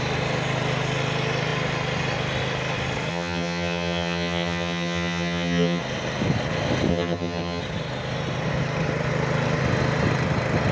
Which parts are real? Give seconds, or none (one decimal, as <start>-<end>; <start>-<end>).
0.0-3.1; 5.8-6.9; 7.6-10.7

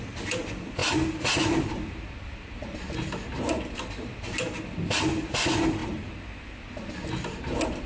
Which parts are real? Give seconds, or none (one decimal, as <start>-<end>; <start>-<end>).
0.0-7.9

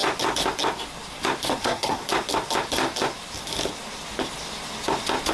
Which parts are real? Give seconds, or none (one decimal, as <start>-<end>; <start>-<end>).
0.0-1.6; 2.0-5.3

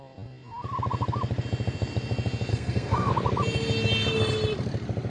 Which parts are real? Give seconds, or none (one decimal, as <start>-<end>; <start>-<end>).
0.0-2.5; 3.1-5.1

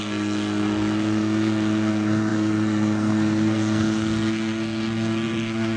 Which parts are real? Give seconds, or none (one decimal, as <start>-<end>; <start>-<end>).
none

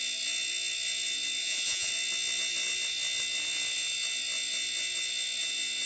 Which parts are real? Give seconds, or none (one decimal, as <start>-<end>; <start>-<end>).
0.0-1.4; 1.9-5.9